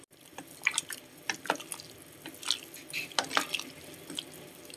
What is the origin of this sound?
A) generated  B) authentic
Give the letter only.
B